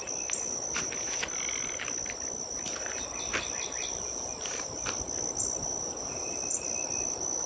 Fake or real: real